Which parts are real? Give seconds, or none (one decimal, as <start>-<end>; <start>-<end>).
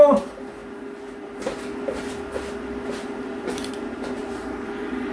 0.6-3.7